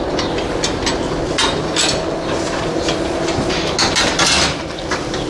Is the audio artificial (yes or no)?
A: no